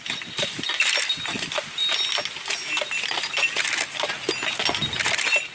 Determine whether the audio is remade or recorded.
recorded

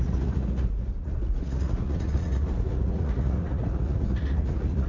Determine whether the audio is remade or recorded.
remade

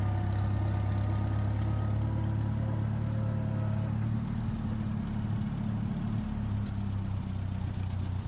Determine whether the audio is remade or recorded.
recorded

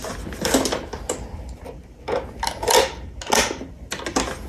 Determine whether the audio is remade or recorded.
recorded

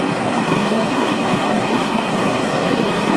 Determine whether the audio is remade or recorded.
remade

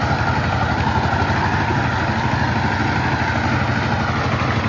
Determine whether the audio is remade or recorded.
recorded